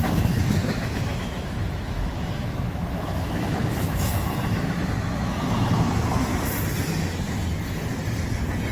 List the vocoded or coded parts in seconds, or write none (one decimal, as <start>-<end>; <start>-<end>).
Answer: 0.0-6.3